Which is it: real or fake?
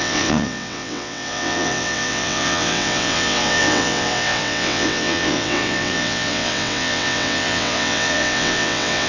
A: fake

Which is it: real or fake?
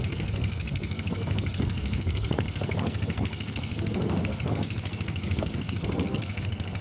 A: fake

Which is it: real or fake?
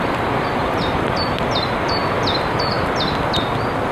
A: real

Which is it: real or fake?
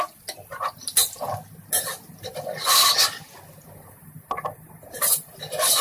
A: real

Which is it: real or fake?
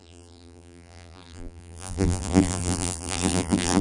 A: fake